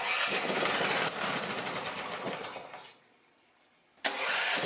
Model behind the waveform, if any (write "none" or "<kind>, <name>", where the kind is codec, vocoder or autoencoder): none